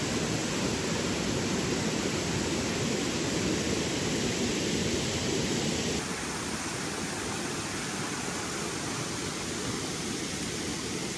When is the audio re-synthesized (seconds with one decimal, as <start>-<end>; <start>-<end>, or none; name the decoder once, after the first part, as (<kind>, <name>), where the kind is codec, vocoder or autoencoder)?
0.0-0.4 (vocoder, BigVGAN v2); 3.3-11.2

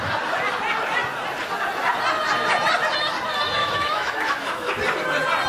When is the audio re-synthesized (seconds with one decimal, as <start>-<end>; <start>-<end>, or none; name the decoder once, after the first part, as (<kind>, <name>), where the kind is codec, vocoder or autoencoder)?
3.6-4.7 (autoencoder, DAC-VAE)

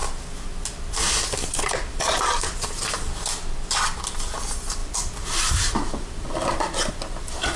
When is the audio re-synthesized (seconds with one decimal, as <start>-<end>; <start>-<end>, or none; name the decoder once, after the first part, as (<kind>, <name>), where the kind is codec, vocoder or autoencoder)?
none

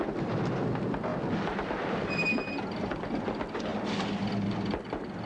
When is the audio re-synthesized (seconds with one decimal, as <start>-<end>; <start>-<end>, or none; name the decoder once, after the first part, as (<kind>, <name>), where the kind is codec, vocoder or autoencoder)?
none

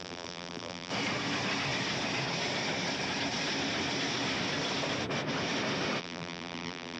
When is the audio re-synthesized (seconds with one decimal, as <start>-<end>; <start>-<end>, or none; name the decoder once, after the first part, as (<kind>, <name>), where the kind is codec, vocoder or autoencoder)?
0.0-0.9 (vocoder, BigVGAN v2); 6.0-7.0

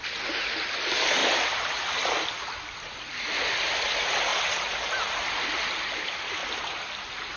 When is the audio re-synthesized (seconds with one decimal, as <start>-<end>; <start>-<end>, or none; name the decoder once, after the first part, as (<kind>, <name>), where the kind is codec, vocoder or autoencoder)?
none